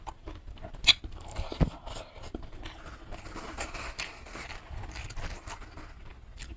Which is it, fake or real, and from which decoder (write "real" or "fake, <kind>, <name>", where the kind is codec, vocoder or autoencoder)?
real